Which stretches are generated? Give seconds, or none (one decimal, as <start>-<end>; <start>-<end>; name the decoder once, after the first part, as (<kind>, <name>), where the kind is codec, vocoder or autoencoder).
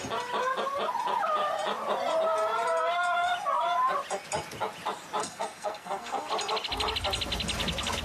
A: 5.2-6.3 (codec, SNAC)